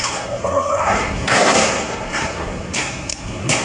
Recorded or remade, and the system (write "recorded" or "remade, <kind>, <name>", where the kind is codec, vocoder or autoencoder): remade, codec, SNAC